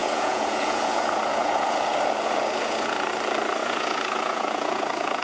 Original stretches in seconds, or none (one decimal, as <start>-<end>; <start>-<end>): 3.1-3.6